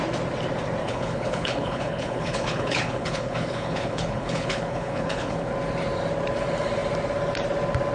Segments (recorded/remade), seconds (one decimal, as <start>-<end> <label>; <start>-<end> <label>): 0.0-0.8 recorded; 0.8-5.5 remade; 5.5-7.9 recorded